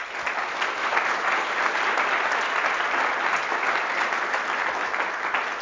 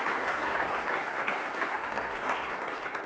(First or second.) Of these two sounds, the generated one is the second